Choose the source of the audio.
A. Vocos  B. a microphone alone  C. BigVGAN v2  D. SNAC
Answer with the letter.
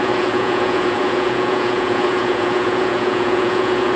A